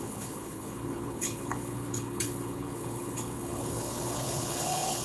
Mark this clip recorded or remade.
remade